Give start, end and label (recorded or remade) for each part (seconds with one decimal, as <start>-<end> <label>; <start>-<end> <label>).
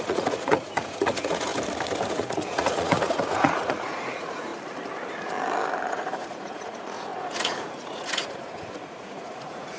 0.0-1.5 remade; 1.5-2.1 recorded; 2.1-4.5 remade; 4.5-5.9 recorded; 5.9-9.8 remade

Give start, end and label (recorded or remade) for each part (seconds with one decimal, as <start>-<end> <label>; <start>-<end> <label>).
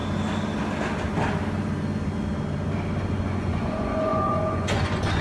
0.0-3.1 recorded; 3.1-5.2 remade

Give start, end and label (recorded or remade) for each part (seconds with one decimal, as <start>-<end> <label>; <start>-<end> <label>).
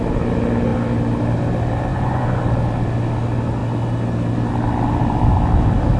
0.0-1.9 recorded; 1.9-2.4 remade; 2.4-6.0 recorded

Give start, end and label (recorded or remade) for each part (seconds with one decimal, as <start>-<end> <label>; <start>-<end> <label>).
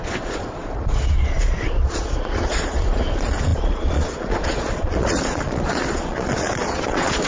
0.0-7.3 remade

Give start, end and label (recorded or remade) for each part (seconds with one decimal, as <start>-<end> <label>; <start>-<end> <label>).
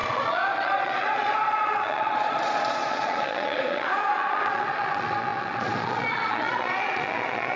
0.0-7.6 remade